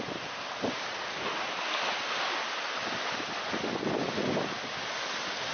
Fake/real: real